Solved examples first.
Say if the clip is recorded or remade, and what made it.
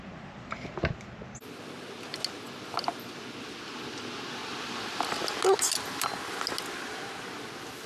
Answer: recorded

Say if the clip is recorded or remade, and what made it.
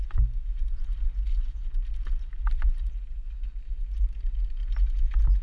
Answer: recorded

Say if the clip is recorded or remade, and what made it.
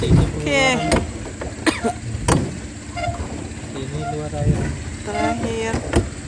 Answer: recorded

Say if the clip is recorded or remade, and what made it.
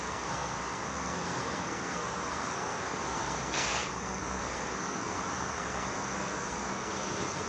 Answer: remade, codec, SNAC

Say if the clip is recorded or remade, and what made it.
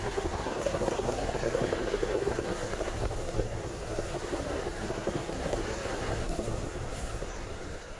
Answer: remade, codec, SNAC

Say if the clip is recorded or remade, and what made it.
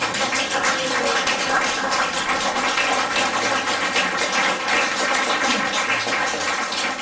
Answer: recorded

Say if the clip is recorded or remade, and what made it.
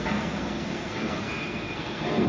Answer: remade, codec, SNAC